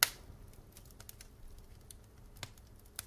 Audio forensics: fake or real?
real